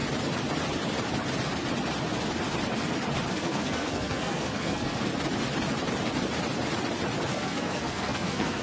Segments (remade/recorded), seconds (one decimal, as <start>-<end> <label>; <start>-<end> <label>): 0.0-3.3 recorded; 3.3-5.1 remade; 5.1-7.3 recorded; 7.3-8.6 remade